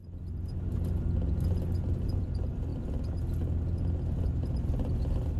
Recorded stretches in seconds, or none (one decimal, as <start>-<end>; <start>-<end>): 0.0-5.4